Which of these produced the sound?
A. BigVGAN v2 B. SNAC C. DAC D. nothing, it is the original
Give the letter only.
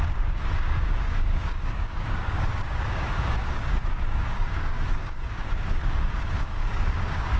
C